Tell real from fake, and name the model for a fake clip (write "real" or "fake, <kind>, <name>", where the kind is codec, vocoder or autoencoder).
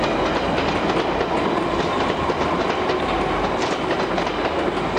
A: real